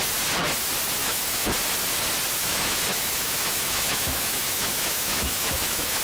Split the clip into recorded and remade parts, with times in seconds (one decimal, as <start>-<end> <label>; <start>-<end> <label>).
0.0-1.0 recorded; 1.0-1.5 remade; 1.5-2.4 recorded; 2.4-6.0 remade